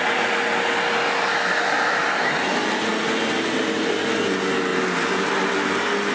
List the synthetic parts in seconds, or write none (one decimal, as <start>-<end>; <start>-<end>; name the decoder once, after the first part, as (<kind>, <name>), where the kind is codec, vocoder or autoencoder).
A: none